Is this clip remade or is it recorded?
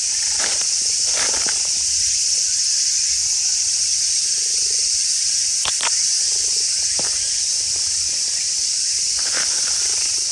recorded